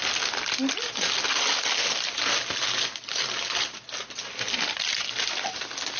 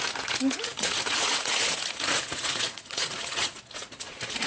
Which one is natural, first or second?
first